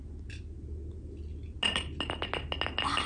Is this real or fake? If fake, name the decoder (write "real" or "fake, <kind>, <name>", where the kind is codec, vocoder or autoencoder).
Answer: real